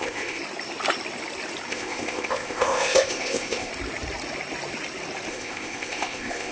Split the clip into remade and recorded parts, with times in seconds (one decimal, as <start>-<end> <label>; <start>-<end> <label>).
0.0-0.4 remade; 0.4-1.7 recorded; 1.7-3.7 remade; 3.7-5.3 recorded; 5.3-6.5 remade